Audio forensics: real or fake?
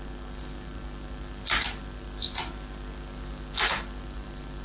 real